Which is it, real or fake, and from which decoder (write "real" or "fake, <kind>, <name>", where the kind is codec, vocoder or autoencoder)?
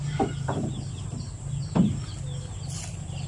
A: fake, vocoder, BigVGAN v2